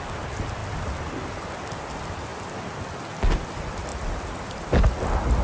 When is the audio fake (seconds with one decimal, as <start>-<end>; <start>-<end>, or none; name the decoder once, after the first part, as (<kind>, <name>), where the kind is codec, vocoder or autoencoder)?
none